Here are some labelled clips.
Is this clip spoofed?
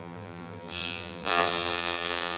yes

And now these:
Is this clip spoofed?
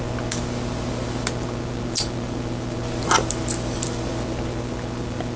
no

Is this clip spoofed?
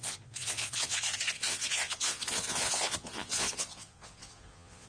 yes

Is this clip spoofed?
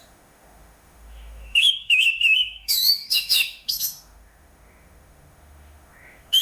yes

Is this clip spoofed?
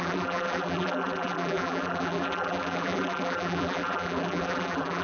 yes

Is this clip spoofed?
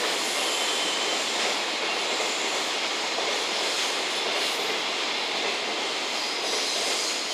no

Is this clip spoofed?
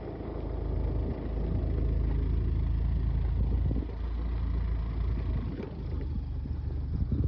no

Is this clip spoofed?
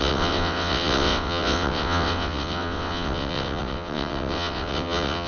yes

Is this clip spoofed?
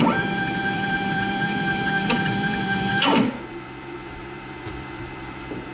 yes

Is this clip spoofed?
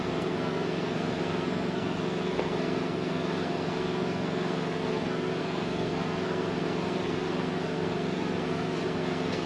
yes